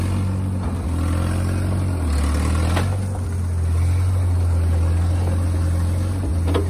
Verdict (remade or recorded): recorded